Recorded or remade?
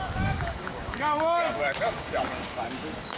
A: remade